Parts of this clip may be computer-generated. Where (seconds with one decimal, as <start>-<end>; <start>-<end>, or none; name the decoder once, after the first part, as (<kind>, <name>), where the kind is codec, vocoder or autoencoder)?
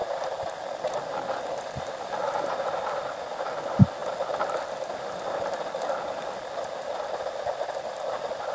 none